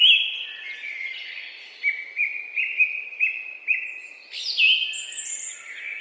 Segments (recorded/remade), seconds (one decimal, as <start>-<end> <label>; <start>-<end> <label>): 0.0-6.0 recorded